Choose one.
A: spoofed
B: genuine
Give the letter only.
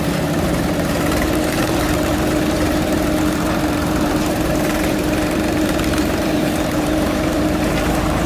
A